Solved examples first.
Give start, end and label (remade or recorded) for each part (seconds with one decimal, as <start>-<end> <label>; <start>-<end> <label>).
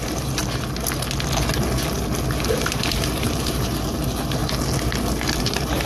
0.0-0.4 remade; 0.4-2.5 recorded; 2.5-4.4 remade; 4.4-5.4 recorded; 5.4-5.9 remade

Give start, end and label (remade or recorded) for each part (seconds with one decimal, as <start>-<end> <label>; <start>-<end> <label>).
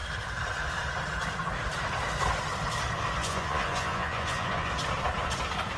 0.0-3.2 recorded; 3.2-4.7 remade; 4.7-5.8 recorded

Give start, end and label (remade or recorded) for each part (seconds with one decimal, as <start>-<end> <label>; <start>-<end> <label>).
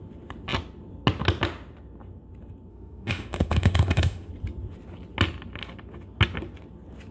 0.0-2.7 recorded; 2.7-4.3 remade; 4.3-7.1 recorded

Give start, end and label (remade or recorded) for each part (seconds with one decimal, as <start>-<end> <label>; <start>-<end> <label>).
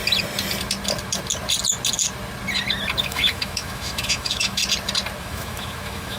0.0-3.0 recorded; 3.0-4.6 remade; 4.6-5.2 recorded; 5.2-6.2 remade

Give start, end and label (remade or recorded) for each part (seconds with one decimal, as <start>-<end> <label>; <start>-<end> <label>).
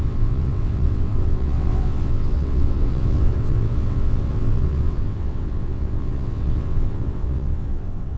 0.0-8.2 remade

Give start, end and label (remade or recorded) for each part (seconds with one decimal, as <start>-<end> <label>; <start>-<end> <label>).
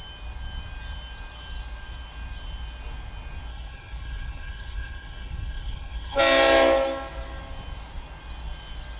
0.0-3.5 recorded; 3.5-6.2 remade; 6.2-9.0 recorded